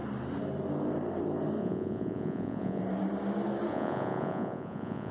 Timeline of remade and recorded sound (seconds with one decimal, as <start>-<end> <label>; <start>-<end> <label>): 0.0-1.6 recorded; 1.6-2.8 remade; 2.8-3.7 recorded; 3.7-5.1 remade